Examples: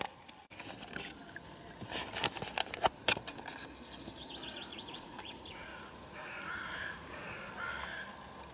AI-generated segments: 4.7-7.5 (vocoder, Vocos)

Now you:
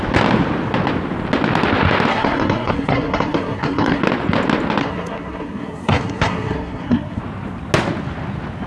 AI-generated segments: 2.1-4.0 (codec, SNAC); 4.8-7.2

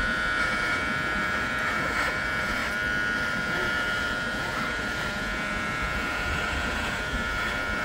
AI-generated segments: 0.0-2.6 (vocoder, Vocos); 3.4-7.8

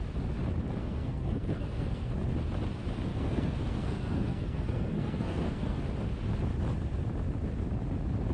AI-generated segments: 0.8-2.1 (codec, SNAC); 3.1-5.8

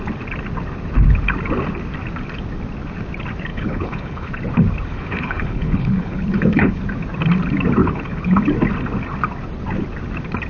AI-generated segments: 3.5-4.3 (codec, HILCodec); 4.9-6.8; 7.8-8.5

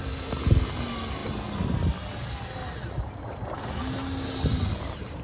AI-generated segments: none